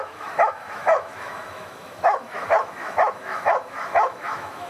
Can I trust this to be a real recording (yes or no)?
no